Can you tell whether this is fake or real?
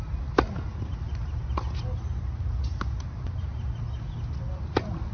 real